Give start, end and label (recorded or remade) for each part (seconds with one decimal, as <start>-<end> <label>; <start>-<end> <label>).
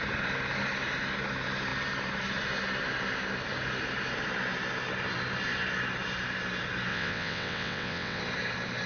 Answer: 0.0-6.9 recorded; 6.9-8.2 remade; 8.2-8.9 recorded